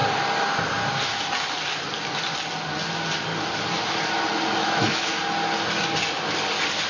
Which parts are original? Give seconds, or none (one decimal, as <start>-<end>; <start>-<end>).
0.0-4.6; 5.2-6.9